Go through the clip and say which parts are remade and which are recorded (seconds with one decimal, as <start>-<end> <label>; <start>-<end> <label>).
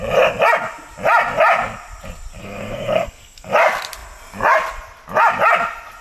0.0-2.4 recorded; 2.4-3.5 remade; 3.5-6.0 recorded